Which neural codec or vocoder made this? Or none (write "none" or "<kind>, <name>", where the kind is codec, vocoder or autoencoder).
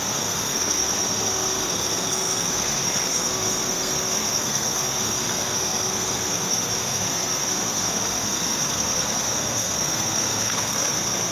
codec, SNAC